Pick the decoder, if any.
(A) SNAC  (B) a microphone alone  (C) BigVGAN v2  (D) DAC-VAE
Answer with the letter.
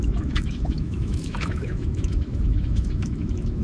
D